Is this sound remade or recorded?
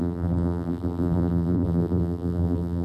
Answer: remade